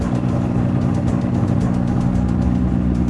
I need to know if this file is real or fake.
real